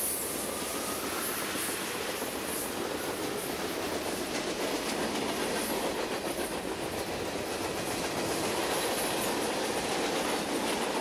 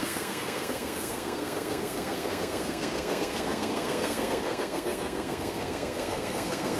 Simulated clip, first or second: second